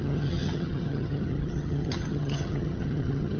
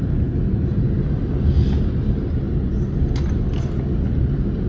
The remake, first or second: first